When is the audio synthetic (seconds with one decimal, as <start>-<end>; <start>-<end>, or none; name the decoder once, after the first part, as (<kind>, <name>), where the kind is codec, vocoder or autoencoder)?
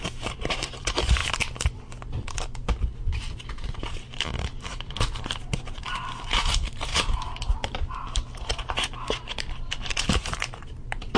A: 0.0-1.2 (vocoder, BigVGAN v2); 3.5-11.2